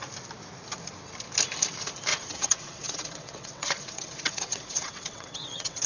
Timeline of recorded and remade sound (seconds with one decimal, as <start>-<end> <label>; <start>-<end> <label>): 0.0-2.1 recorded; 2.1-5.9 remade